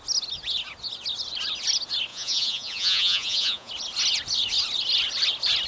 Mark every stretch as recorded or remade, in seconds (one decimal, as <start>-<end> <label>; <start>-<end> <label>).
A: 0.0-2.1 recorded; 2.1-3.7 remade; 3.7-5.7 recorded